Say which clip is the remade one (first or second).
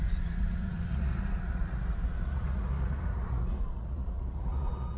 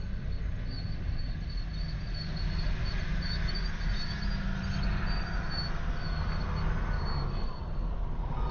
first